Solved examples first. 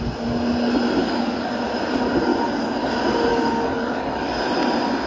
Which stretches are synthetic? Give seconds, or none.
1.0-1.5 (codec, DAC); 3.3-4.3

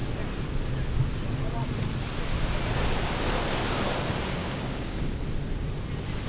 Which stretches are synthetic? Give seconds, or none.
4.4-5.2 (codec, DAC)

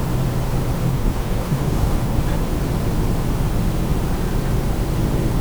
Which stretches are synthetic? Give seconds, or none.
0.9-2.2 (codec, DAC)